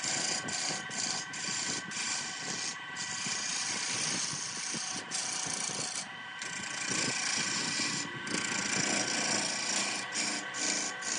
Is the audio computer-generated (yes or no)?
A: no